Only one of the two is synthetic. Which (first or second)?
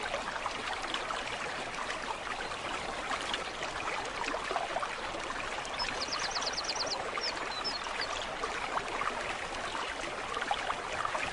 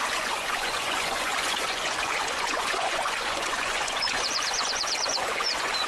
second